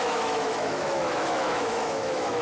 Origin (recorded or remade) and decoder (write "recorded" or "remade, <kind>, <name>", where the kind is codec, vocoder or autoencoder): remade, autoencoder, DAC-VAE